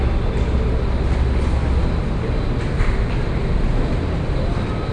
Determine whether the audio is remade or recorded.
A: recorded